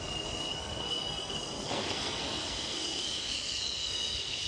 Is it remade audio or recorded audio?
remade